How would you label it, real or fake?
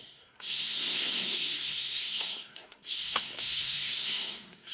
fake